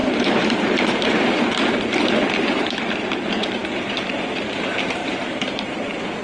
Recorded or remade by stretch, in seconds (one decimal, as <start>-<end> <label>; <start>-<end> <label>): 0.0-1.6 remade; 1.6-5.0 recorded; 5.0-6.2 remade